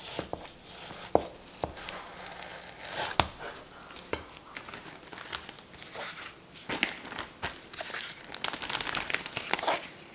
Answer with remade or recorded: recorded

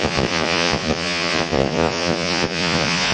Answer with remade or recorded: remade